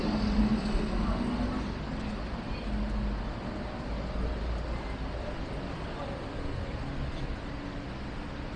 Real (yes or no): yes